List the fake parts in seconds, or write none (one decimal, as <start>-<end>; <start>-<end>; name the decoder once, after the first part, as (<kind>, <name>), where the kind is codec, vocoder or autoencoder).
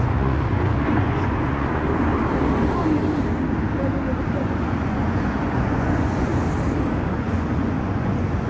0.0-2.1 (vocoder, Vocos); 4.3-6.3; 7.0-8.5